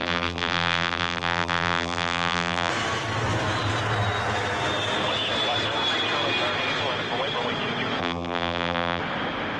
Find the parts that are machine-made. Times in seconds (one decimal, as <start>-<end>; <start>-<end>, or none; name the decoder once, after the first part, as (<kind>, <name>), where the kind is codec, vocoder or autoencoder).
0.0-2.7 (vocoder, BigVGAN v2); 8.0-9.0